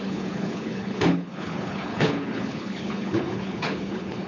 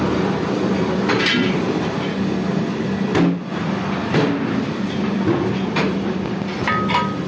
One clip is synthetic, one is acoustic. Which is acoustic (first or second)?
second